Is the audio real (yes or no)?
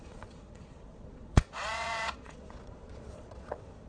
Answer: no